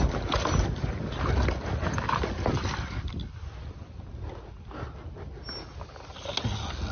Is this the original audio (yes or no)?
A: yes